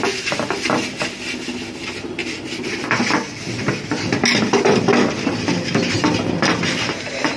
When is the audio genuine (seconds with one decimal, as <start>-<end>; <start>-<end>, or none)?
0.0-2.2; 3.0-7.4